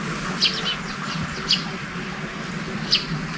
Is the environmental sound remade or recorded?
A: remade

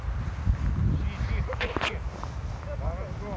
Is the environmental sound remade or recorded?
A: recorded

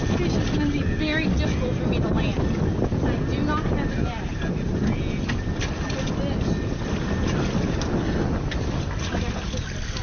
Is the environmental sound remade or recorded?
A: recorded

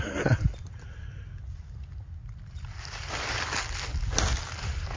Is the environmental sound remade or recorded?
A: recorded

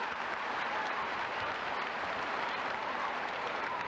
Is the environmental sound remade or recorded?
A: remade